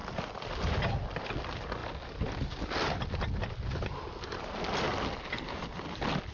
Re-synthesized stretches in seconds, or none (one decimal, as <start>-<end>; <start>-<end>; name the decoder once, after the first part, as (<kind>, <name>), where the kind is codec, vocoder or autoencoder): none